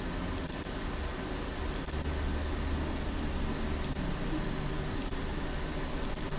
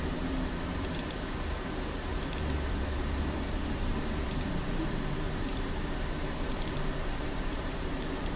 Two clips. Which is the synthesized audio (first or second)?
second